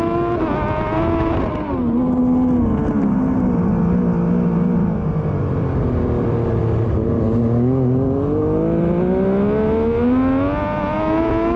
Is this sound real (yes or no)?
yes